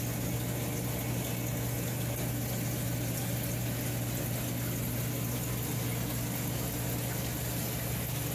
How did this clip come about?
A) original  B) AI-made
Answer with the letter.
A